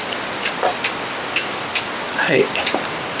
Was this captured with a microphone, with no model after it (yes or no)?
yes